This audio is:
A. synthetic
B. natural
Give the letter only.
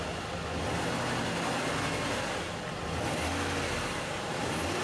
B